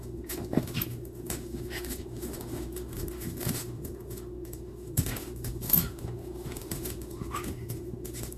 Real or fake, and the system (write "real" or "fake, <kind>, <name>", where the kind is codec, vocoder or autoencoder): fake, autoencoder, DAC-VAE